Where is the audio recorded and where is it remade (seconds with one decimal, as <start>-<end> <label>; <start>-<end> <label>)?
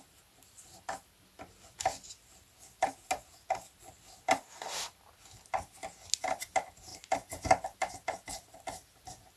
0.0-9.4 recorded